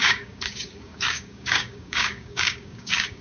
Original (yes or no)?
no